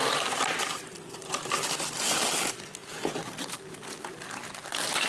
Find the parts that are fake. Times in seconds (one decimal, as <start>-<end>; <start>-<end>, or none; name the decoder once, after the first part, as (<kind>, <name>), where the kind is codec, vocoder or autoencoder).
none